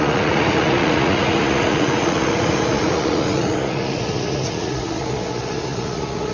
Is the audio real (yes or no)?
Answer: no